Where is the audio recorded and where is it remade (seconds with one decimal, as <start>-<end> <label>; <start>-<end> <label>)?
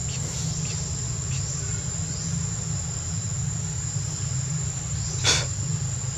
0.0-6.2 recorded